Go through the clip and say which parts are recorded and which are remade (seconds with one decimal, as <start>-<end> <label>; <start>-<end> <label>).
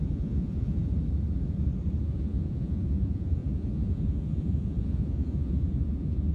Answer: 0.0-0.9 remade; 0.9-2.0 recorded; 2.0-6.3 remade